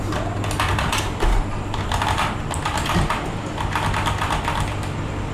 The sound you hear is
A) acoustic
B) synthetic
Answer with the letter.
A